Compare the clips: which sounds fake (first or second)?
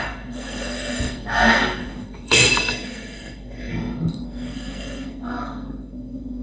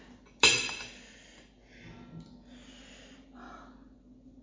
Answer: first